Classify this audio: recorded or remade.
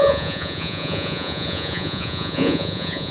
remade